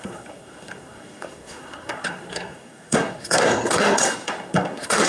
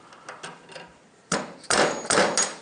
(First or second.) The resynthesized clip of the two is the first